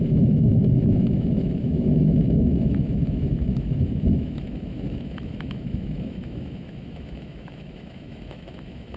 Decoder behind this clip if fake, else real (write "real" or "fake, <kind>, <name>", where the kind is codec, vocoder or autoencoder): fake, autoencoder, DAC-VAE